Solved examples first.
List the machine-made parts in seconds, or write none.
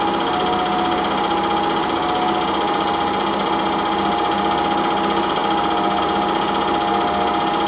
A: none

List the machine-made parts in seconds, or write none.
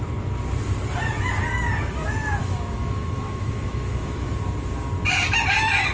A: 2.4-4.3 (autoencoder, DAC-VAE)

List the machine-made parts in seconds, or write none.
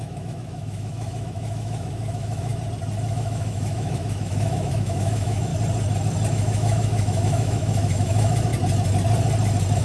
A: 0.0-2.5 (autoencoder, DAC-VAE); 3.1-5.5; 6.3-8.5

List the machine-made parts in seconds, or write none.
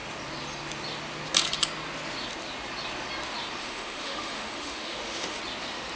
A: 3.6-5.4 (autoencoder, DAC-VAE)